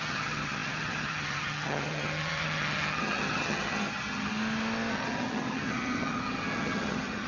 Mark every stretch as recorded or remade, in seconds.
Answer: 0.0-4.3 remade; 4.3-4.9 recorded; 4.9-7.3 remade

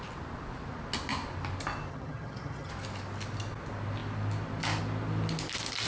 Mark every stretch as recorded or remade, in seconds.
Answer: 0.0-1.9 recorded; 1.9-2.7 remade; 2.7-5.9 recorded

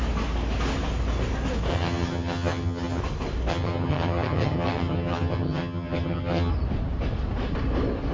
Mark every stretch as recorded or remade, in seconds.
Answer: 0.0-1.7 recorded; 1.7-3.0 remade; 3.0-3.5 recorded; 3.5-6.5 remade; 6.5-8.1 recorded

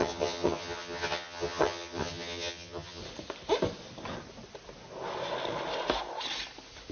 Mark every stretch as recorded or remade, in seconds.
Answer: 0.0-3.0 remade; 3.0-6.9 recorded

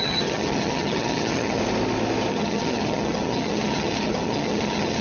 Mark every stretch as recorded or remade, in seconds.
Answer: 0.0-1.6 remade; 1.6-2.3 recorded; 2.3-5.0 remade